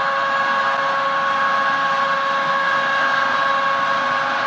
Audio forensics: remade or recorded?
recorded